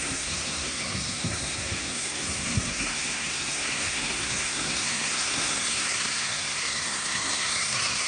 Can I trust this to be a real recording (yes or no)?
no